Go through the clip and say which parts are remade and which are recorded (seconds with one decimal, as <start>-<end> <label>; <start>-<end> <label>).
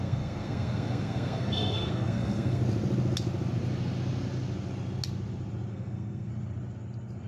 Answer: 0.0-2.6 remade; 2.6-5.7 recorded; 5.7-6.3 remade; 6.3-7.3 recorded